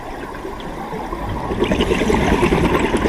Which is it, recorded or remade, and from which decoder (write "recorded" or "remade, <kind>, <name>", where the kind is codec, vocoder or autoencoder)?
recorded